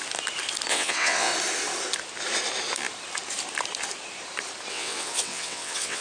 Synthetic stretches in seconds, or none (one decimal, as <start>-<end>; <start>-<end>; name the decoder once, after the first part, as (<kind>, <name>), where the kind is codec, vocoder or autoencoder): 0.7-1.3 (vocoder, WaveNeXt); 4.7-6.0